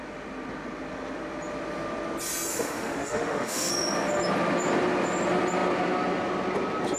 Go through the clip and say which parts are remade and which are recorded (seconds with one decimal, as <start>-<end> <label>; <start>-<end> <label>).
0.0-2.5 recorded; 2.5-3.7 remade; 3.7-7.0 recorded